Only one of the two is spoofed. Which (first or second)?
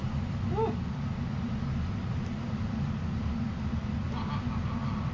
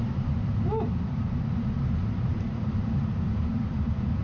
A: second